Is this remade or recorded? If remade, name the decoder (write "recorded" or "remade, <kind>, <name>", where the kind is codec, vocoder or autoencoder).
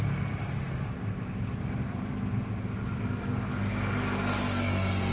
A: recorded